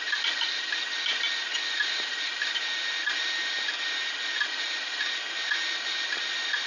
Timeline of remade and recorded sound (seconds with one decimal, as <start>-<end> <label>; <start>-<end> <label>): 0.0-6.7 recorded